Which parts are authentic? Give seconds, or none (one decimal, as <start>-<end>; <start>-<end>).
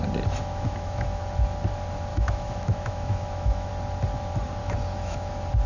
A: 0.0-0.4; 1.2-2.1; 3.7-4.6; 5.3-5.7